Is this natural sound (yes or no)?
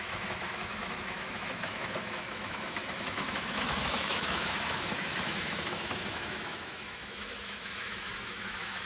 no